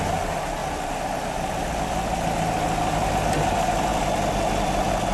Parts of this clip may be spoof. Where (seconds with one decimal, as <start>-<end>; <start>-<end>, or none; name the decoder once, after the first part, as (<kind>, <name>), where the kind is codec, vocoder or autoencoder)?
none